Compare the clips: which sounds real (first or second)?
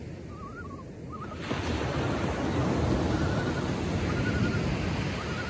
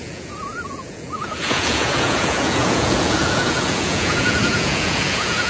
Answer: first